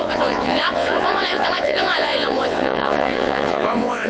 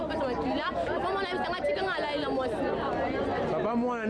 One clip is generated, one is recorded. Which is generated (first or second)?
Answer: first